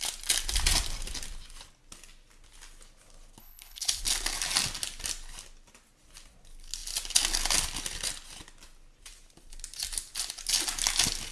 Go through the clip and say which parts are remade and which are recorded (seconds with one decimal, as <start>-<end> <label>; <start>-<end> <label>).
0.0-3.4 recorded; 3.4-4.0 remade; 4.0-11.3 recorded